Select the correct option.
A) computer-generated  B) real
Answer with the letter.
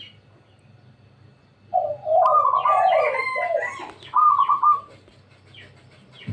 B